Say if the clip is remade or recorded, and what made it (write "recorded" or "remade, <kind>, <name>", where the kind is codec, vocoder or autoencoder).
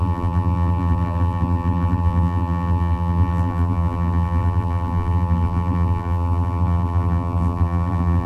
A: remade, vocoder, BigVGAN v2